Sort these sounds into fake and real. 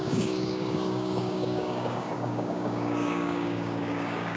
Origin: fake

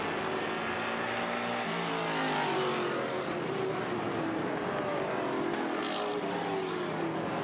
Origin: real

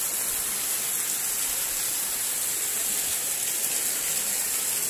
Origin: real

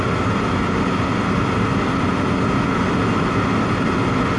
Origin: real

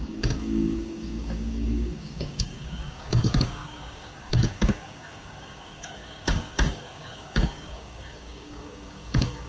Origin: fake